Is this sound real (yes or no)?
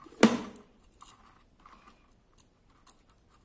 yes